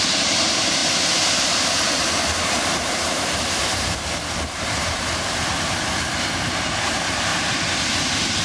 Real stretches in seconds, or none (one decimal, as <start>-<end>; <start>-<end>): 7.3-7.8